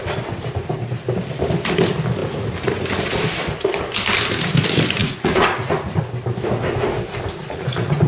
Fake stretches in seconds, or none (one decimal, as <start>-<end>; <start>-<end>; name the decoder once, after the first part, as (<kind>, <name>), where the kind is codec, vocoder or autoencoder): 5.0-6.0 (vocoder, Vocos); 7.4-8.1